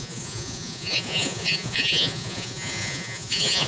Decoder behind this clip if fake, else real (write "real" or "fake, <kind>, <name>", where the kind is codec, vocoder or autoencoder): fake, vocoder, Vocos